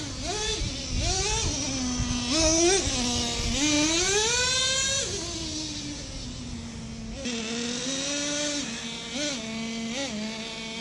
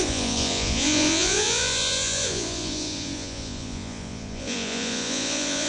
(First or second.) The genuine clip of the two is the first